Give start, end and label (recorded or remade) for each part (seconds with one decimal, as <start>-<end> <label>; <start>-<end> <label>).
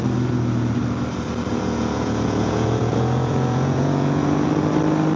0.0-1.5 recorded; 1.5-4.5 remade; 4.5-5.2 recorded